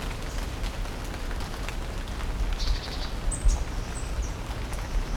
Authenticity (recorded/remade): recorded